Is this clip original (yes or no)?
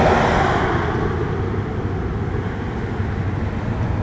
yes